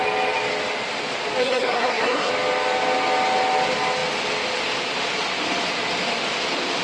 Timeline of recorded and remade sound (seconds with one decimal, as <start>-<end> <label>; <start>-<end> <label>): 0.0-1.4 recorded; 1.4-2.3 remade; 2.3-6.8 recorded